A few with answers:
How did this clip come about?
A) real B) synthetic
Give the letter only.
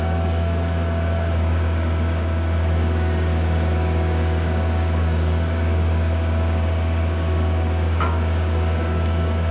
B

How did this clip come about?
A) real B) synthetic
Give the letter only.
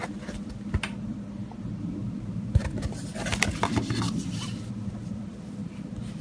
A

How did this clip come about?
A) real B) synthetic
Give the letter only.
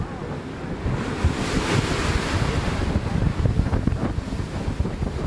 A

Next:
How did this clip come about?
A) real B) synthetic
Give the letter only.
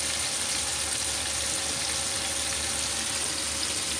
A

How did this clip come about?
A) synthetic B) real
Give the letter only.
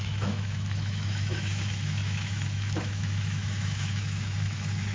A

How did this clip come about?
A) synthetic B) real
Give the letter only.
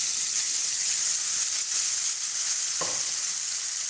B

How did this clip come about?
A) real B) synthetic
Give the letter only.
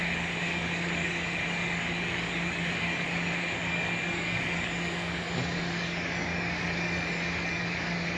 B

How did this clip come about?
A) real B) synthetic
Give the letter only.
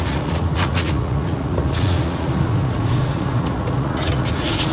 B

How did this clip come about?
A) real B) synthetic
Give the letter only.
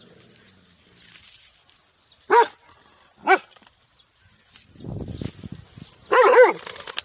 A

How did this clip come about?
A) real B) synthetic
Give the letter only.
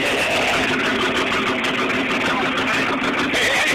A